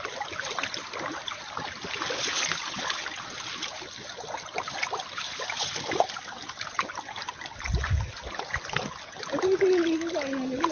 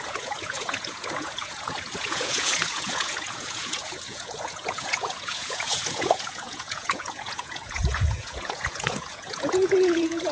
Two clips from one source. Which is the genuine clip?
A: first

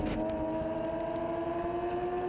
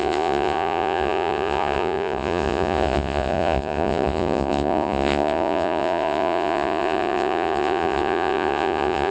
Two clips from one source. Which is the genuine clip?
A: first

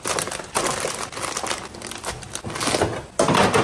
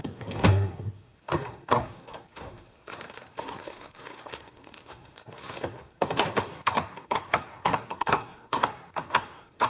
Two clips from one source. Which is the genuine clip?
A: first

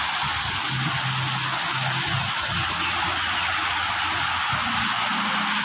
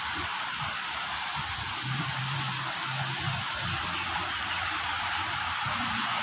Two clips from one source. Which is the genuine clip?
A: first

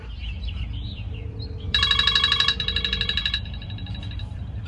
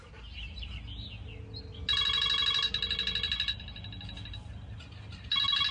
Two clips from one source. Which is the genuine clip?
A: second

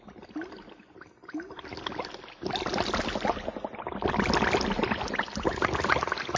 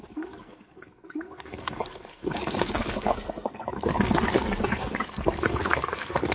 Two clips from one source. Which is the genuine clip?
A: first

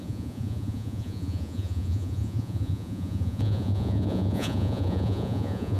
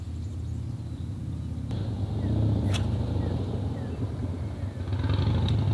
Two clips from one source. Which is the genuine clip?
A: second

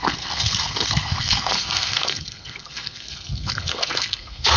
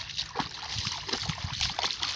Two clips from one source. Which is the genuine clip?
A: second